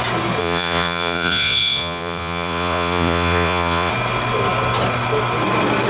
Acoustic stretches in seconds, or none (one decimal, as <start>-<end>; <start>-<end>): 0.0-0.4; 3.9-5.9